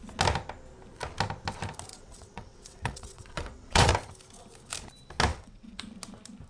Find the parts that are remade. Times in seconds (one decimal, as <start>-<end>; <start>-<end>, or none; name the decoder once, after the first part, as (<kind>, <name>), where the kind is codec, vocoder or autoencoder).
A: 1.9-3.9 (vocoder, WaveNeXt); 5.3-5.8